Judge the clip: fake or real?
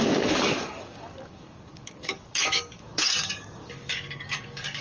fake